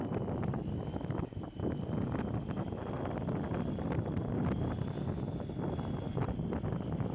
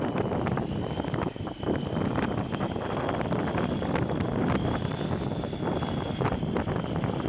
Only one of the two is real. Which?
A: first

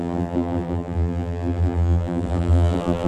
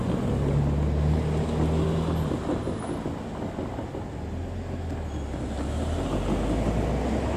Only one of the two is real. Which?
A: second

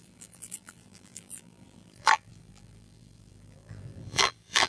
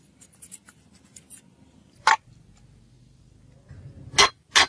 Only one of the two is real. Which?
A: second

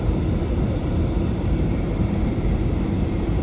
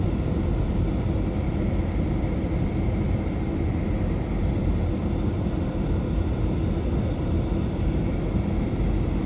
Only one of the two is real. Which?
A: second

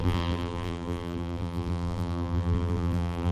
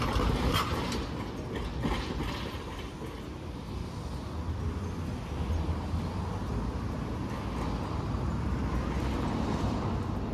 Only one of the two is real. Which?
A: second